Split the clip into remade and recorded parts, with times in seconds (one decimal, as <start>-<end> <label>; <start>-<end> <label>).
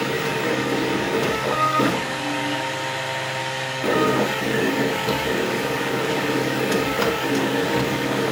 0.0-2.8 remade; 2.8-3.4 recorded; 3.4-8.3 remade